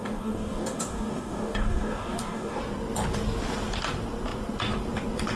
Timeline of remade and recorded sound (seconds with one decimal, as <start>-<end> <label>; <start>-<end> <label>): 0.0-2.6 remade; 2.6-5.4 recorded